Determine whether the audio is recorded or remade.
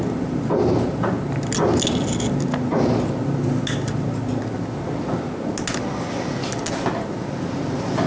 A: recorded